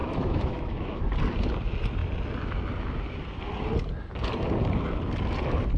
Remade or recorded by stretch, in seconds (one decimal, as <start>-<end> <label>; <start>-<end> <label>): 0.0-1.0 remade; 1.0-5.8 recorded